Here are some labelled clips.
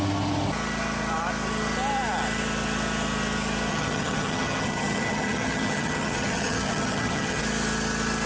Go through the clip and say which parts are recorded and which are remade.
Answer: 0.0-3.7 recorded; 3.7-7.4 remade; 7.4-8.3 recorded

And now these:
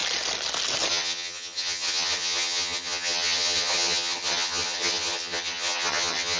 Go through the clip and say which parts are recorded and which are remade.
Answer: 0.0-0.9 recorded; 0.9-6.4 remade

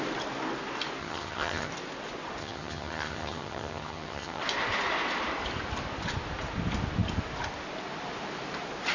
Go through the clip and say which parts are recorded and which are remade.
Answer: 0.0-1.0 recorded; 1.0-1.7 remade; 1.7-2.4 recorded; 2.4-4.4 remade; 4.4-8.9 recorded

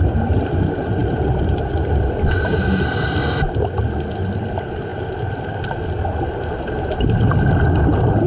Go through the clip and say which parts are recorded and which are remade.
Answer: 0.0-1.0 recorded; 1.0-1.9 remade; 1.9-4.9 recorded; 4.9-5.8 remade; 5.8-8.3 recorded

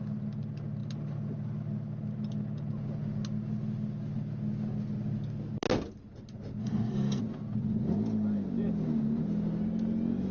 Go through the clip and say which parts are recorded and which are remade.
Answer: 0.0-6.6 recorded; 6.6-7.2 remade; 7.2-10.3 recorded